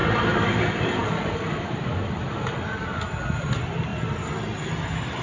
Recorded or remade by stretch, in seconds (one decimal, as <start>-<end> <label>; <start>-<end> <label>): 0.0-0.6 remade; 0.6-1.0 recorded; 1.0-2.3 remade; 2.3-5.2 recorded